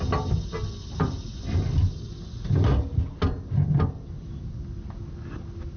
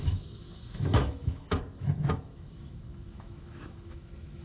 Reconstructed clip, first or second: second